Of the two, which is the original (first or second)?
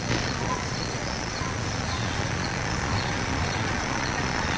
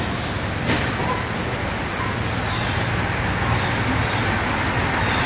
second